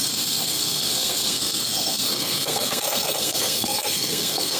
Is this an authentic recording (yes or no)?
no